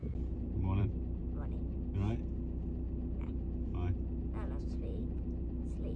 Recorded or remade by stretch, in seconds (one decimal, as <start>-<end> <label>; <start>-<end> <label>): 0.0-1.2 remade; 1.2-3.2 recorded; 3.2-3.7 remade; 3.7-4.6 recorded; 4.6-5.0 remade; 5.0-6.0 recorded